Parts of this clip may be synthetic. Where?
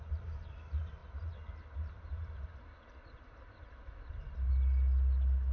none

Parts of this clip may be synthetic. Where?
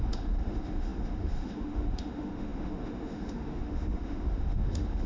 0.0-5.1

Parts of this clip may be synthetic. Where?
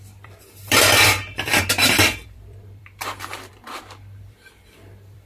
0.0-5.3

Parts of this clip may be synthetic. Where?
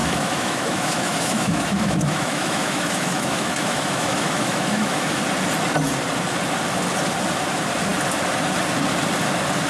0.0-5.2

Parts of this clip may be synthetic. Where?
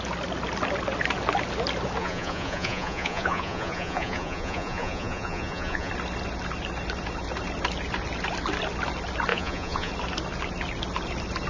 2.0-5.9; 9.3-9.9